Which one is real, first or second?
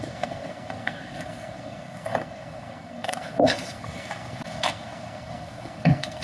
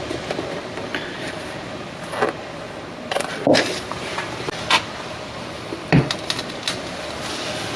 second